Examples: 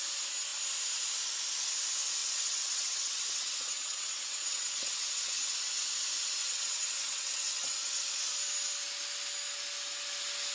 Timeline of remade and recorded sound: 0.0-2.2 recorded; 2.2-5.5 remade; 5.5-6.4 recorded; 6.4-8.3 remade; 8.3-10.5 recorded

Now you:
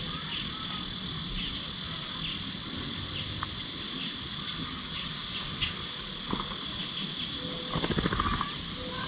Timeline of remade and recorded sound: 0.0-4.6 recorded; 4.6-5.1 remade; 5.1-9.1 recorded

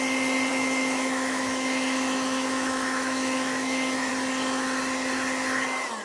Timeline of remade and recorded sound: 0.0-0.5 recorded; 0.5-4.1 remade; 4.1-6.0 recorded

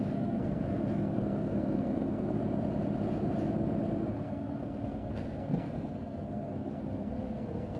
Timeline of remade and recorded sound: 0.0-2.4 remade; 2.4-4.1 recorded; 4.1-7.8 remade

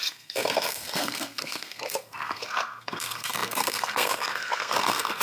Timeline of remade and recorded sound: 0.0-5.2 remade

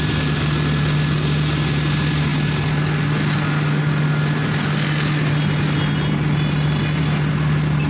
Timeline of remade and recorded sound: 0.0-7.9 recorded

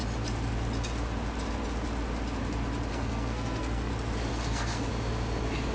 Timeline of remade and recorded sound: 0.0-2.9 recorded; 2.9-3.9 remade; 3.9-4.3 recorded; 4.3-4.9 remade; 4.9-5.7 recorded

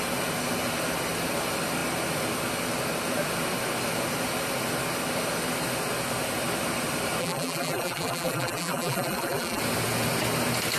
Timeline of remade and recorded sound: 0.0-7.2 recorded; 7.2-9.6 remade; 9.6-10.8 recorded